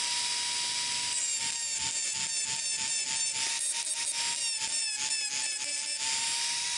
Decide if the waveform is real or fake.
real